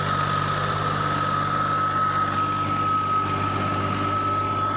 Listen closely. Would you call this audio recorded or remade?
recorded